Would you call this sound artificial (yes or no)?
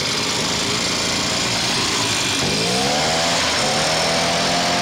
no